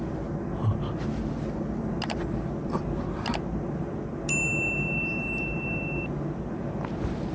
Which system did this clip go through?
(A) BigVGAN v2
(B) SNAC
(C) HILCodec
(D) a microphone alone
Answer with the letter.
D